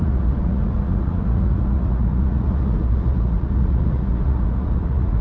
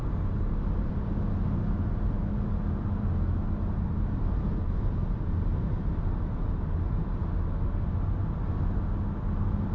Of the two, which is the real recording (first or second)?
second